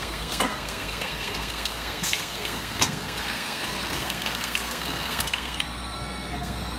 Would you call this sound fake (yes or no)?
yes